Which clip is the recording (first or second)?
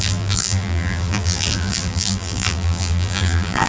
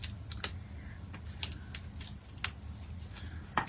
second